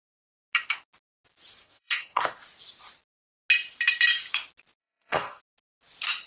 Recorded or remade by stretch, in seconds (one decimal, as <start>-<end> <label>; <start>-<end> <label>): 0.0-1.6 recorded; 1.6-2.2 remade; 2.2-4.8 recorded; 4.8-5.4 remade; 5.4-6.3 recorded